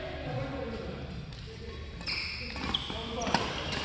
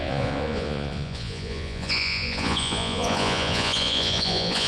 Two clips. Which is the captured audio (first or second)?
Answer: first